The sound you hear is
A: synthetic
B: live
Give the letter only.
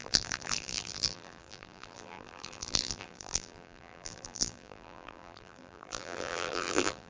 A